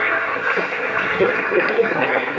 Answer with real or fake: fake